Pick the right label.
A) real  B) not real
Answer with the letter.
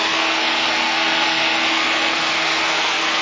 B